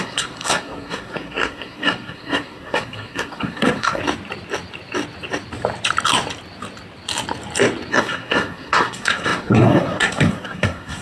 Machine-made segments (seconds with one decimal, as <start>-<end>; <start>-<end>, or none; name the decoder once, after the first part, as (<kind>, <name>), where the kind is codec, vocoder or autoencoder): 0.0-4.0 (codec, SNAC); 7.9-11.0